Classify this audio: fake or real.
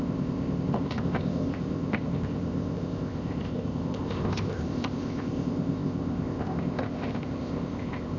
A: fake